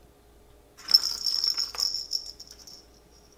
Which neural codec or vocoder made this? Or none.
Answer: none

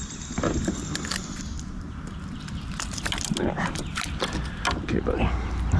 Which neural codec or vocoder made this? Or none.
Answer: none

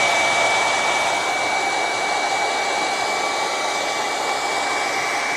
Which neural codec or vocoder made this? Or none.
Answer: none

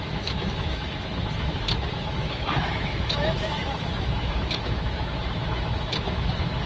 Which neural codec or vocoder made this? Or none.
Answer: autoencoder, DAC-VAE